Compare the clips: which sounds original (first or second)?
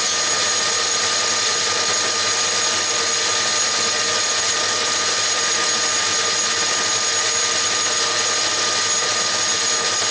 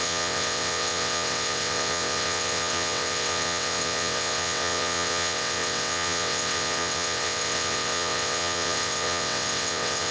first